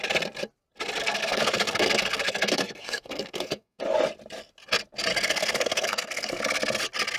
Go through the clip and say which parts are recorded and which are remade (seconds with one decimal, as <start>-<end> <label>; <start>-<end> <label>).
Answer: 0.0-1.0 recorded; 1.0-3.8 remade; 3.8-5.1 recorded; 5.1-6.4 remade; 6.4-7.2 recorded